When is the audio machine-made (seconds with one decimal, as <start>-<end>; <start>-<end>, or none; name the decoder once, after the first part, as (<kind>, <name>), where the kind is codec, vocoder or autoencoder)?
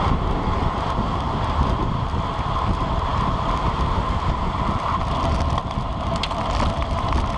1.0-1.8 (vocoder, BigVGAN v2)